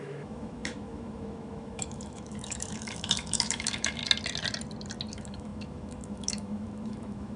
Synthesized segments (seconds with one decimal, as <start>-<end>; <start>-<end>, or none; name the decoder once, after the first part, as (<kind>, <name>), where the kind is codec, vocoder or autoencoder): 0.0-4.0 (autoencoder, DAC-VAE); 5.1-7.4